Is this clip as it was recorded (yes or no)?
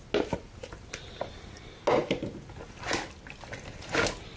yes